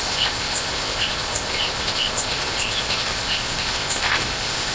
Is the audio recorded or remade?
remade